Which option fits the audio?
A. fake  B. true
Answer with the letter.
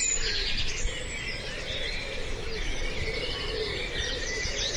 A